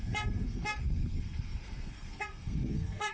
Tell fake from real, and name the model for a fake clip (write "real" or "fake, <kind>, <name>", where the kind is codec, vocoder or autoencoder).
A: fake, codec, SNAC